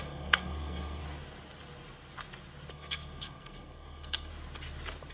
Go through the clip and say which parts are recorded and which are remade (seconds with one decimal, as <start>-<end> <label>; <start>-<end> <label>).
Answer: 0.0-1.0 remade; 1.0-2.7 recorded; 2.7-4.3 remade; 4.3-5.1 recorded